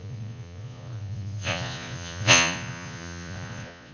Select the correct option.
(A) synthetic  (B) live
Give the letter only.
A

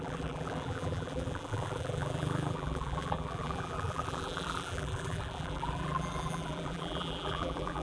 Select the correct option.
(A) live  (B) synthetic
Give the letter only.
B